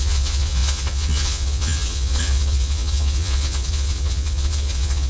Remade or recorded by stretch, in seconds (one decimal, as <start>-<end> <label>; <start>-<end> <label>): 0.0-5.1 remade